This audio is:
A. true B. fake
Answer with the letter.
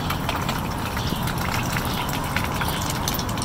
A